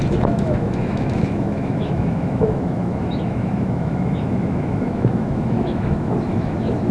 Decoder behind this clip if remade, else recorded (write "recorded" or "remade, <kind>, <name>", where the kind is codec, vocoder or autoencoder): remade, autoencoder, DAC-VAE